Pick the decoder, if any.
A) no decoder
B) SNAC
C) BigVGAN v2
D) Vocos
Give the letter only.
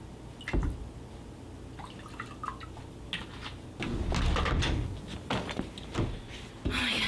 A